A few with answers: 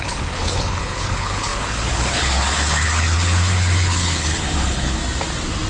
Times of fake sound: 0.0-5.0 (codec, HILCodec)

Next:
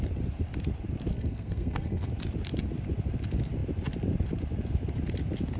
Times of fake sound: 1.1-2.1 (codec, SNAC)

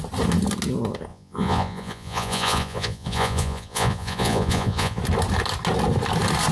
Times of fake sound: 1.1-5.0 (vocoder, Vocos)

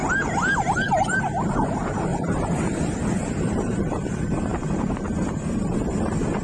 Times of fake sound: 1.0-2.1 (vocoder, BigVGAN v2); 2.6-6.4

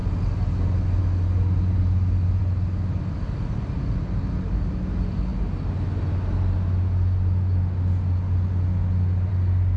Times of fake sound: none